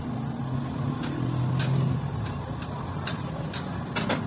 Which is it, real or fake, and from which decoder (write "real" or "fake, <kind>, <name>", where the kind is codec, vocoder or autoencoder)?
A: real